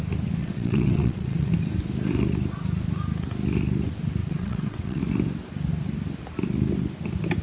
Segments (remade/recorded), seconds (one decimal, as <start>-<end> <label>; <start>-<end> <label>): 0.0-0.4 recorded; 0.4-1.5 remade; 1.5-4.2 recorded; 4.2-5.0 remade; 5.0-7.4 recorded